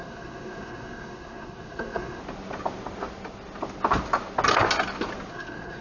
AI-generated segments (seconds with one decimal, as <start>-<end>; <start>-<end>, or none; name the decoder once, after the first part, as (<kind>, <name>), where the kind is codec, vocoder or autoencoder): 0.0-2.2 (codec, SNAC); 5.3-5.8